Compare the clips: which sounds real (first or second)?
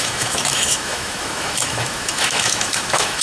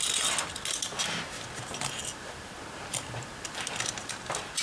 second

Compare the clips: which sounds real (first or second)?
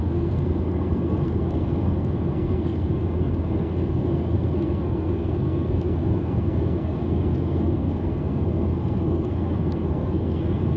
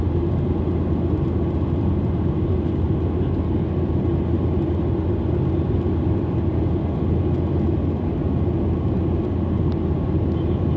second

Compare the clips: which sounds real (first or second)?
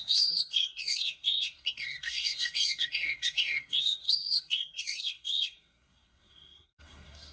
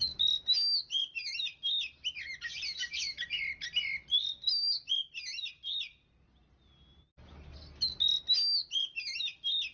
second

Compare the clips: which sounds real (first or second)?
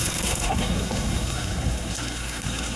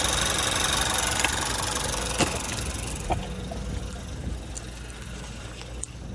second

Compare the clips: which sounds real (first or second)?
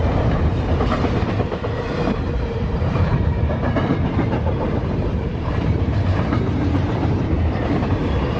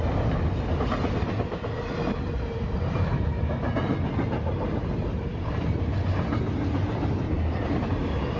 second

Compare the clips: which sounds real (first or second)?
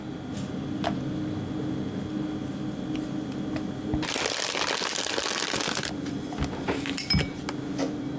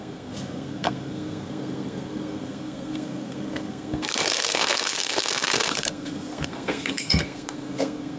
first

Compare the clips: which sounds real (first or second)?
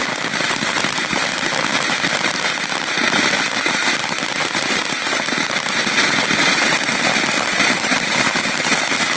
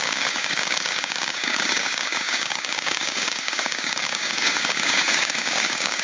first